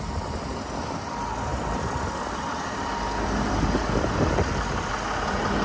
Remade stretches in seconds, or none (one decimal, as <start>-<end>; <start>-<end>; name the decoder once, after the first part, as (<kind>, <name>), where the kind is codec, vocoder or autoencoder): none